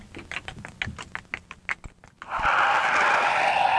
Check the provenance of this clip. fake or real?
real